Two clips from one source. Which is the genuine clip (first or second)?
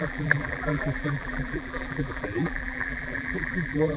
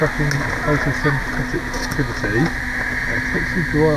second